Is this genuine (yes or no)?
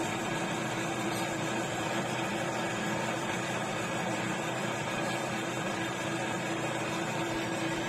no